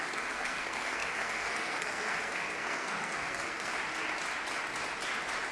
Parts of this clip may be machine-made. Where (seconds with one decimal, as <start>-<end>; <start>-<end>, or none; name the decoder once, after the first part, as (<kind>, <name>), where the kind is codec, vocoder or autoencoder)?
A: 0.0-3.7 (codec, SNAC)